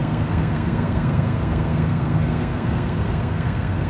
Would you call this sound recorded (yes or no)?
no